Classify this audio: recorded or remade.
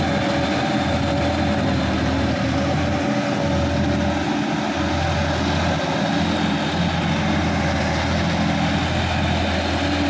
recorded